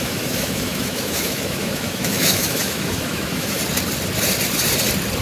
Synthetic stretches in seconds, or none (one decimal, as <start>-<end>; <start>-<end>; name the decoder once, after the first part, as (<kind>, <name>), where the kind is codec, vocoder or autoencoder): 0.0-3.6 (autoencoder, DAC-VAE)